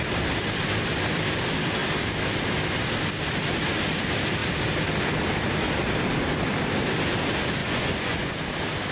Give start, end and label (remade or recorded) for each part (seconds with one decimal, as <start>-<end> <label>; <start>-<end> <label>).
0.0-7.6 recorded; 7.6-8.3 remade; 8.3-8.9 recorded